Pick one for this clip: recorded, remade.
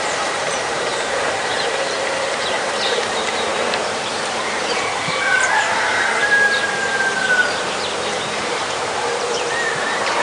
remade